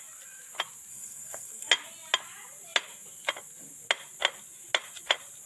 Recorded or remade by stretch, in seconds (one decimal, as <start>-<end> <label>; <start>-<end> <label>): 0.0-0.9 recorded; 0.9-1.7 remade; 1.7-5.5 recorded